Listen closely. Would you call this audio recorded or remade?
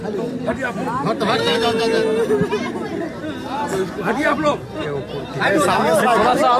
recorded